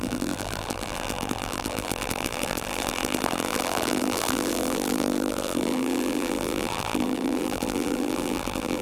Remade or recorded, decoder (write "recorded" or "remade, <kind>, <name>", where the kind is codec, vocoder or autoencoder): remade, vocoder, BigVGAN v2